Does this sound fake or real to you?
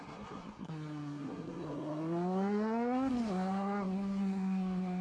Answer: fake